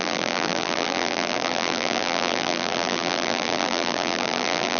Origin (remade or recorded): remade